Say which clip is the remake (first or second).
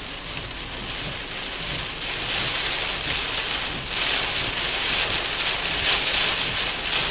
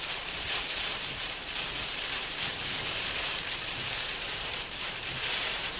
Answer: second